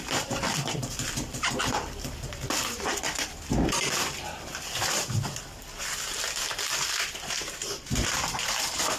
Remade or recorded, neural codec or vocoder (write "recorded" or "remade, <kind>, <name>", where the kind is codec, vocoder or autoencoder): remade, vocoder, BigVGAN v2